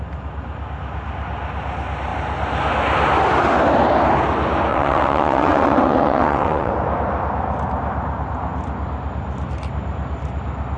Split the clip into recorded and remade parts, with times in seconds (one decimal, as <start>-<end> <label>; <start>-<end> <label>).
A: 0.0-4.7 recorded; 4.7-6.7 remade; 6.7-10.8 recorded